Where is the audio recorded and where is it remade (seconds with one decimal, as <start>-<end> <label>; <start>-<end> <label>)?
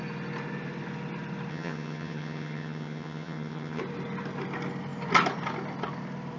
0.0-1.5 recorded; 1.5-3.8 remade; 3.8-6.4 recorded